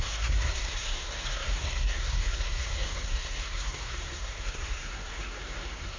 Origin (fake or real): fake